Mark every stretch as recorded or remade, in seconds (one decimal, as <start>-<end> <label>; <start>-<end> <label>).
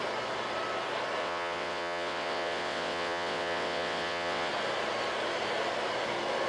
0.0-1.2 recorded; 1.2-4.5 remade; 4.5-6.5 recorded